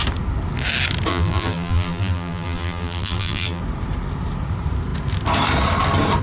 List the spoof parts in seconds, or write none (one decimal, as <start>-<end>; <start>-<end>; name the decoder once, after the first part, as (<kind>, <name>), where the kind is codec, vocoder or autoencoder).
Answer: 1.1-3.6 (vocoder, BigVGAN v2)